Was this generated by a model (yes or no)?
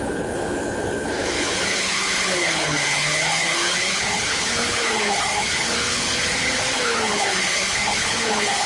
yes